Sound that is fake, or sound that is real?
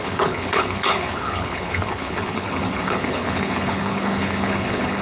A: fake